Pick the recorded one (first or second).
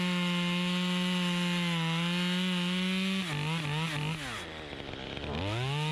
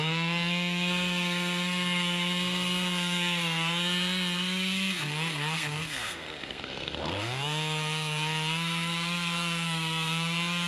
first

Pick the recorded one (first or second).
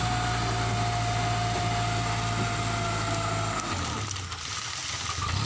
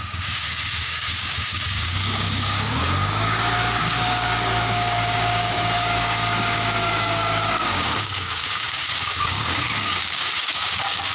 first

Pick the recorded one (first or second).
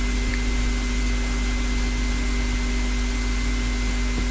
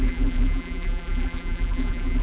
first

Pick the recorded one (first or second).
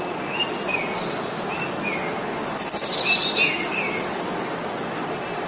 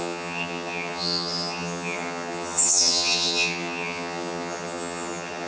first